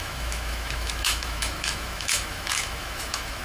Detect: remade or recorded remade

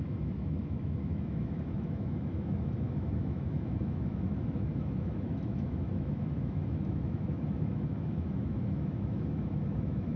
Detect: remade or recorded remade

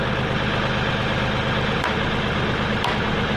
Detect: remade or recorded recorded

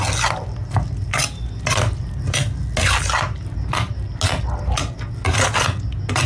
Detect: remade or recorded recorded